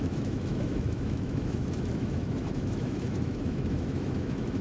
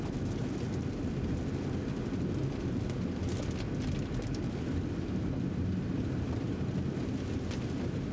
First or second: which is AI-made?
first